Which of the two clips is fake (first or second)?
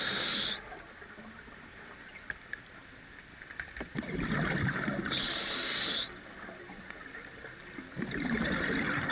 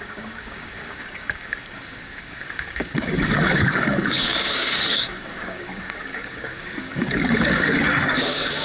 second